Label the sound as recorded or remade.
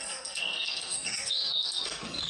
remade